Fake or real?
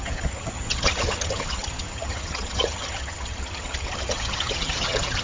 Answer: fake